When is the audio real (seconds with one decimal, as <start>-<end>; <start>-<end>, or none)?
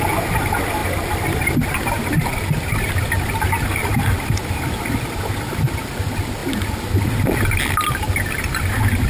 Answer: 0.0-9.1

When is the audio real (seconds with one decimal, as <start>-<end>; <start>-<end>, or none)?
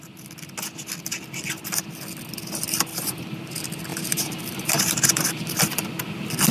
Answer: 0.0-2.9; 3.5-3.9; 5.6-6.5